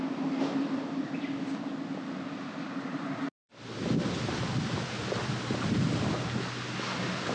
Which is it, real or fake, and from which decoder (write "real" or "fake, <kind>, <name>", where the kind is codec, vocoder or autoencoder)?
real